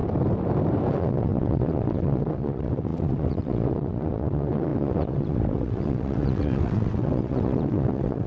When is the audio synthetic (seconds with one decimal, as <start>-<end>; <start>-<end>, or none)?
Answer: 0.9-8.3